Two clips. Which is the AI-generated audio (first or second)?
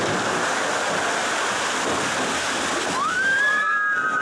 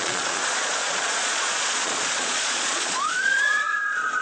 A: second